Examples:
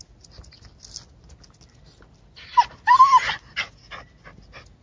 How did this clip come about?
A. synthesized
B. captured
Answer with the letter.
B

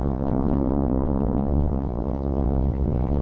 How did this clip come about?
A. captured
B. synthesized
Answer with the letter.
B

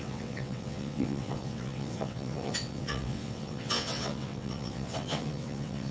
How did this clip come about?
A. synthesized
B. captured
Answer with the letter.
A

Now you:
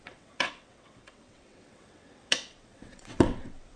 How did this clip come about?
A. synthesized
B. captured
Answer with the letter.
A